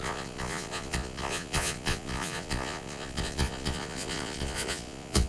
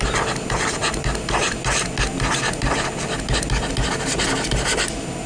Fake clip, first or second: first